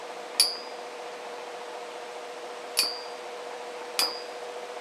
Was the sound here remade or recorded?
recorded